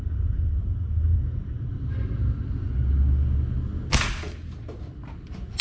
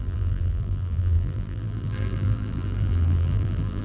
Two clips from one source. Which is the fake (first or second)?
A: second